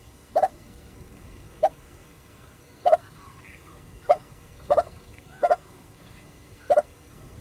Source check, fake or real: fake